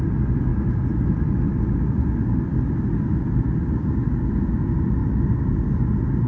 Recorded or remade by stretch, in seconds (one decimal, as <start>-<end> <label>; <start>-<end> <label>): 0.0-6.3 recorded